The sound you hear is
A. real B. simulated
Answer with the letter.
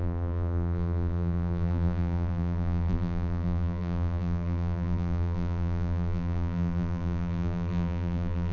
B